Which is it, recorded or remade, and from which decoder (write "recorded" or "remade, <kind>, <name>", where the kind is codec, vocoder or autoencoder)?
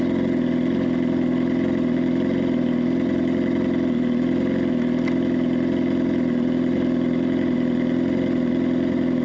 recorded